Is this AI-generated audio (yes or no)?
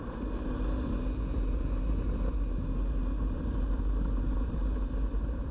yes